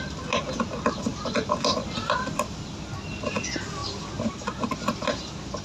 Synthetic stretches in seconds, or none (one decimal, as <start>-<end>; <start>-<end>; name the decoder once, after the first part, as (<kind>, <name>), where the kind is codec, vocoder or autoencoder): none

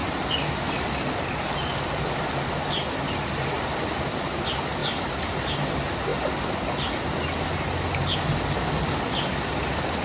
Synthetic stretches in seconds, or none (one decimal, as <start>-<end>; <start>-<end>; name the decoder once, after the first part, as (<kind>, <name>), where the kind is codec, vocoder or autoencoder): none

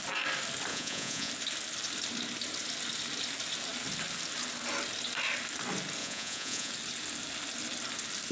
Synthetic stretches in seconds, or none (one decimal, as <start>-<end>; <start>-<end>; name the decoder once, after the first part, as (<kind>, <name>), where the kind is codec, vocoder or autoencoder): 0.7-1.3 (vocoder, Vocos); 6.0-6.7

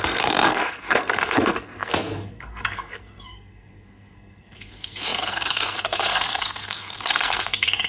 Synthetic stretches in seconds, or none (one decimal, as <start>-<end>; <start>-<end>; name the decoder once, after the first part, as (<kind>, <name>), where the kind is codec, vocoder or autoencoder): 0.0-7.9 (codec, SNAC)

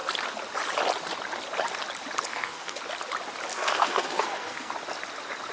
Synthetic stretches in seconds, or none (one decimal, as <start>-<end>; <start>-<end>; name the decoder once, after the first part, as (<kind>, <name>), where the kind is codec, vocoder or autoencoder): 2.3-2.8 (codec, SNAC); 3.5-4.7

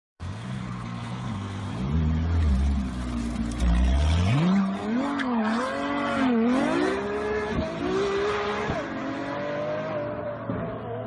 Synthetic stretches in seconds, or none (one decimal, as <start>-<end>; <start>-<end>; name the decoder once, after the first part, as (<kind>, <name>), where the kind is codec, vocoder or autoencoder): 0.0-1.6 (codec, SNAC)

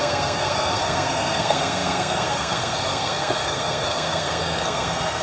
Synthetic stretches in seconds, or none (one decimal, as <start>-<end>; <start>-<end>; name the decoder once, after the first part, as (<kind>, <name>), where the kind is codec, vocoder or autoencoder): 0.0-5.2 (codec, SNAC)